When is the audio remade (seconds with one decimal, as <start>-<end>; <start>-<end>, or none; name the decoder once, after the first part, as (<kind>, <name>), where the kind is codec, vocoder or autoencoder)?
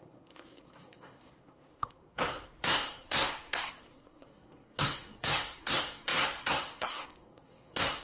0.0-8.0 (codec, SNAC)